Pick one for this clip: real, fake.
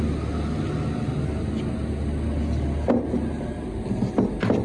real